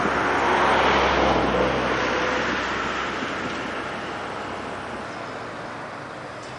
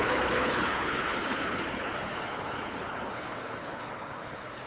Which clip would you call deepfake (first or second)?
second